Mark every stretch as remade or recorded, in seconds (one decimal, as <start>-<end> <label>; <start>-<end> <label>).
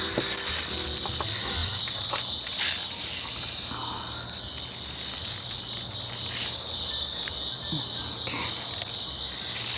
0.0-9.8 recorded